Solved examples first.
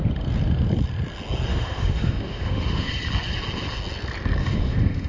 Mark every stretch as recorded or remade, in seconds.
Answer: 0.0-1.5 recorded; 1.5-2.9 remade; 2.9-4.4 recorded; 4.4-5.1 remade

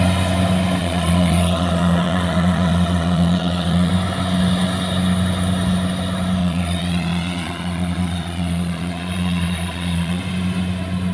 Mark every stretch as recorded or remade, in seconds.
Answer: 0.0-0.8 recorded; 0.8-3.9 remade; 3.9-6.4 recorded; 6.4-10.2 remade; 10.2-11.1 recorded

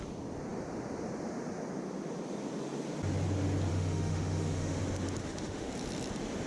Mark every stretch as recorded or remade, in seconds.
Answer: 0.0-3.7 recorded; 3.7-4.8 remade; 4.8-5.2 recorded; 5.2-5.7 remade; 5.7-6.5 recorded

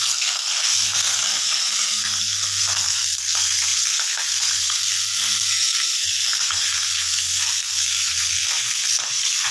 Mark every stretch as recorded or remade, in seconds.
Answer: 0.0-9.5 remade

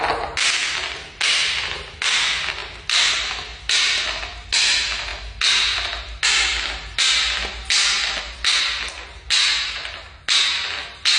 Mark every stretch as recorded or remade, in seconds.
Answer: 0.0-2.6 recorded; 2.6-3.1 remade; 3.1-11.2 recorded

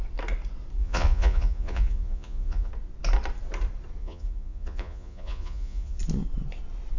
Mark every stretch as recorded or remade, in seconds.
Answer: 0.0-0.8 recorded; 0.8-2.7 remade; 2.7-4.0 recorded; 4.0-6.0 remade; 6.0-7.0 recorded